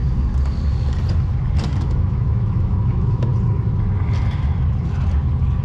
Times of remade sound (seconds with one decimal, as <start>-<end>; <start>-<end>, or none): 1.8-3.3